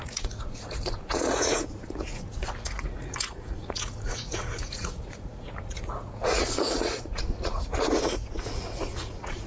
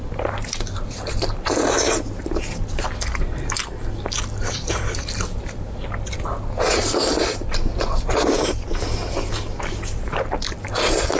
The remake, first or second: first